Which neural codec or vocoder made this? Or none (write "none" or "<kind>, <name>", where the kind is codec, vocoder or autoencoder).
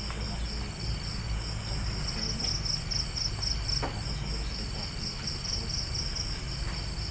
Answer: none